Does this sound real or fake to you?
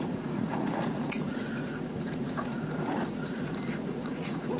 fake